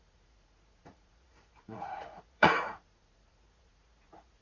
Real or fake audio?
fake